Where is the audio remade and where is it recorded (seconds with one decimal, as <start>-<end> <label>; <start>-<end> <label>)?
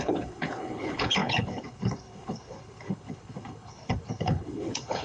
0.0-5.0 remade